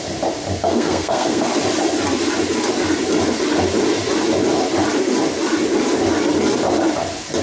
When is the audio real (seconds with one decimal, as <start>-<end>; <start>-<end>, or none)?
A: 0.0-0.6; 1.5-7.4